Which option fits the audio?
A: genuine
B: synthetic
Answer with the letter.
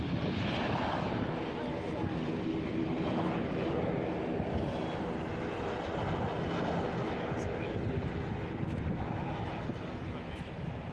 A